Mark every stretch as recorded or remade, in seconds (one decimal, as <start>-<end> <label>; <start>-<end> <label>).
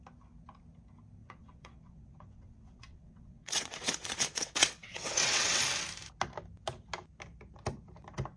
0.0-1.2 recorded; 1.2-5.6 remade; 5.6-8.4 recorded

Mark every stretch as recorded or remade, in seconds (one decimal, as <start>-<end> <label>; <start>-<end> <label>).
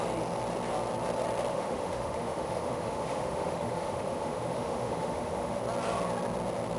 0.0-1.5 recorded; 1.5-5.6 remade; 5.6-6.8 recorded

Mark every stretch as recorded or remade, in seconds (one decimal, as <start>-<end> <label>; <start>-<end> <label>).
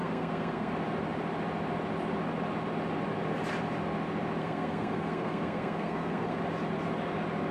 0.0-0.7 remade; 0.7-4.4 recorded; 4.4-6.4 remade; 6.4-7.5 recorded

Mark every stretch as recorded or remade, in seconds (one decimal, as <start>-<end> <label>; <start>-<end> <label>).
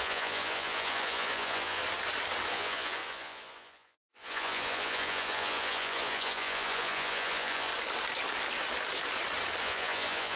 0.0-1.8 remade; 1.8-2.5 recorded; 2.5-7.7 remade; 7.7-9.6 recorded; 9.6-10.4 remade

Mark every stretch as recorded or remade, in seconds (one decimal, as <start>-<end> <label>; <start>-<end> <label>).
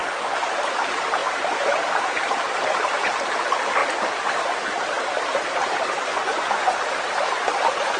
0.0-0.5 remade; 0.5-6.1 recorded; 6.1-6.8 remade; 6.8-8.0 recorded